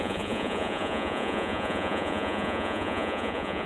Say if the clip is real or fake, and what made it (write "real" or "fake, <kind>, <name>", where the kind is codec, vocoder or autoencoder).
fake, vocoder, Vocos